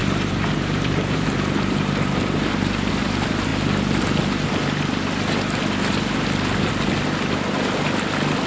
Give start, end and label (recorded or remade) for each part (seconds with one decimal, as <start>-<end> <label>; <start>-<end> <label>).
0.0-2.9 remade; 2.9-8.5 recorded